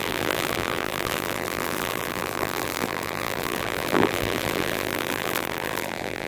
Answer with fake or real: fake